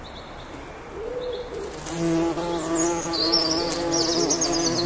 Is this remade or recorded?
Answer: recorded